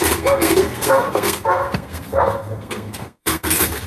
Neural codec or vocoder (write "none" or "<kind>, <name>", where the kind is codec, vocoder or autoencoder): codec, SNAC